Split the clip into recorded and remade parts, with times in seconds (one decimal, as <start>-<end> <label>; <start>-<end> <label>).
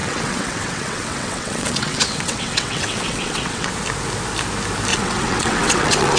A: 0.0-3.7 remade; 3.7-4.9 recorded; 4.9-6.2 remade